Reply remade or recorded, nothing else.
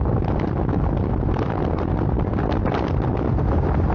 recorded